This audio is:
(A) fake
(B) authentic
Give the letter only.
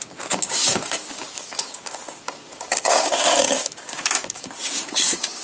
A